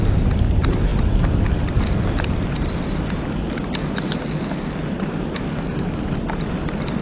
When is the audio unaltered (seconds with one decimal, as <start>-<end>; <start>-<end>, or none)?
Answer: 0.0-5.5; 6.1-7.0